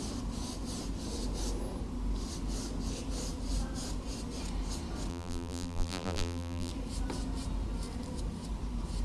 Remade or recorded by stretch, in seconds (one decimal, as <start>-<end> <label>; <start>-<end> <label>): 0.0-5.1 recorded; 5.1-6.7 remade; 6.7-9.0 recorded